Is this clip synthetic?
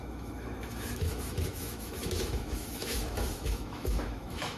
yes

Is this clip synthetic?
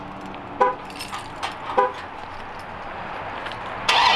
no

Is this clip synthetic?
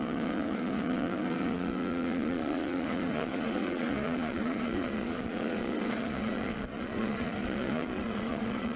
yes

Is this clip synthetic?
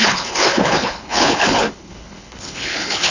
yes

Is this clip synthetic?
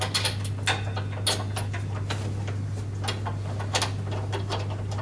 no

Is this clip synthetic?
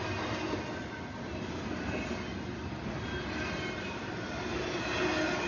no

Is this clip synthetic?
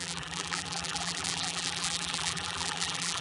yes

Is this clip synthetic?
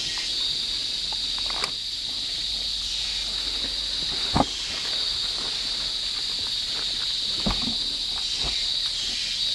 no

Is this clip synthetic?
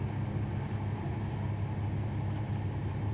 no